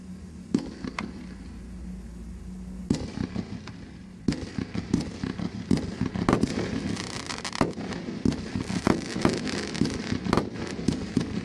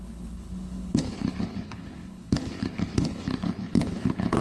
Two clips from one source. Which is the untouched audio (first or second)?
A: first